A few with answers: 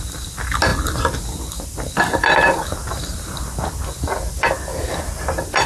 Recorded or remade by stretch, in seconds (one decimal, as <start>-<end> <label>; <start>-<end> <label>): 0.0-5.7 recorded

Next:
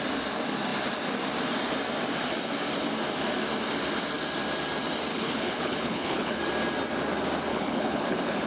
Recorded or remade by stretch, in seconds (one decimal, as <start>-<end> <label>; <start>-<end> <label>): 0.0-5.1 recorded; 5.1-6.4 remade; 6.4-7.5 recorded; 7.5-8.5 remade

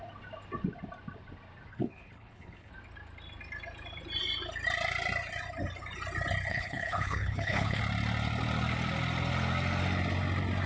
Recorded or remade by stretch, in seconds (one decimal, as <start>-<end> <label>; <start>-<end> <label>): 0.0-1.7 recorded; 1.7-2.7 remade; 2.7-6.5 recorded; 6.5-7.8 remade; 7.8-10.7 recorded

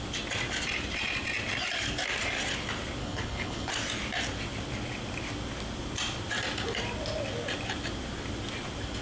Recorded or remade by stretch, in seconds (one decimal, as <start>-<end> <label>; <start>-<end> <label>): 0.0-3.0 recorded; 3.0-3.7 remade; 3.7-9.0 recorded

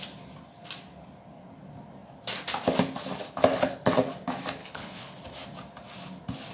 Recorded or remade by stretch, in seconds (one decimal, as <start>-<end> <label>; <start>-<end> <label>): 0.0-4.6 recorded; 4.6-5.2 remade; 5.2-6.5 recorded

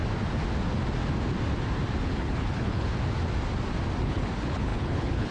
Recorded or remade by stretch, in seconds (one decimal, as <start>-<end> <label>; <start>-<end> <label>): 0.0-2.0 recorded; 2.0-2.9 remade; 2.9-4.0 recorded; 4.0-5.3 remade